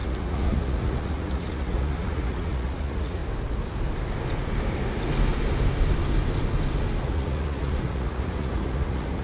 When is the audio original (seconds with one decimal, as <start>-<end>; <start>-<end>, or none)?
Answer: 3.2-7.0